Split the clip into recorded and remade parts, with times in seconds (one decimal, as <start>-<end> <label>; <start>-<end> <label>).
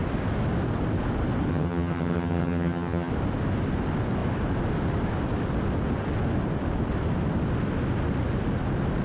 0.0-1.5 recorded; 1.5-3.1 remade; 3.1-9.0 recorded